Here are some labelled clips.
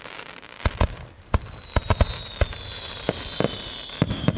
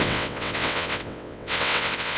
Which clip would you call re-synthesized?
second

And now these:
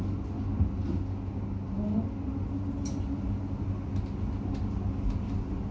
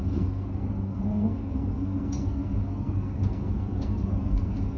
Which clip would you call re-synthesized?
second